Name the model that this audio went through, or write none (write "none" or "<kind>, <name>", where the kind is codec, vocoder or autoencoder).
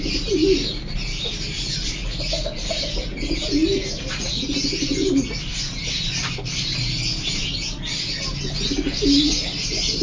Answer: none